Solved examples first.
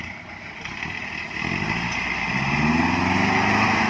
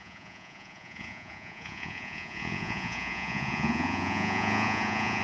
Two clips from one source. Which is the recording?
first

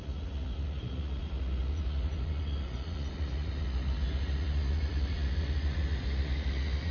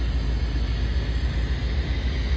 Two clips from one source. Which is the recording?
second